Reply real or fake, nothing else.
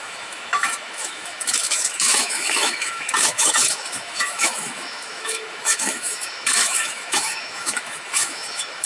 fake